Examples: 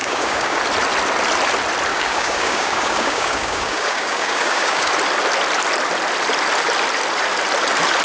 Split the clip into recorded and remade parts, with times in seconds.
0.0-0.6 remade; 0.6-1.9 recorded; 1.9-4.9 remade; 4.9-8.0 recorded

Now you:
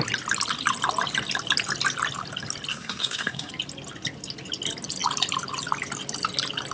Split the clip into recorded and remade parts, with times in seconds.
0.0-2.7 recorded; 2.7-3.5 remade; 3.5-6.7 recorded